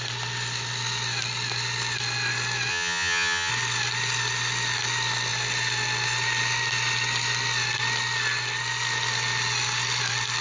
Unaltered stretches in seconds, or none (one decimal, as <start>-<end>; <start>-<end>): 0.0-2.7; 3.5-10.4